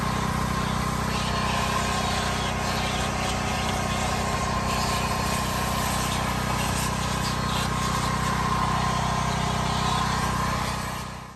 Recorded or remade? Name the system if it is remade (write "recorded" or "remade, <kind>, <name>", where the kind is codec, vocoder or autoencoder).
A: recorded